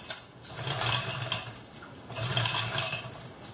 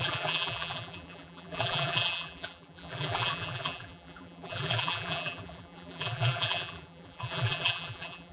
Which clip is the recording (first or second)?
first